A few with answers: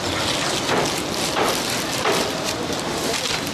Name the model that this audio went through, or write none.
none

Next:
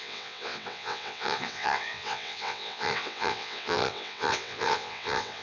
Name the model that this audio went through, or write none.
vocoder, WaveNeXt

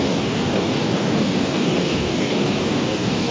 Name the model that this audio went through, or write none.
codec, DAC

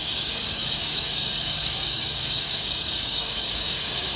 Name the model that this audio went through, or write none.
codec, DAC